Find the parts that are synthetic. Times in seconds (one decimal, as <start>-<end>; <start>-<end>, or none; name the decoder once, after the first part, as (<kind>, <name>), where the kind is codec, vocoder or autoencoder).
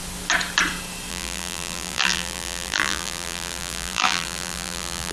1.1-5.1 (vocoder, BigVGAN v2)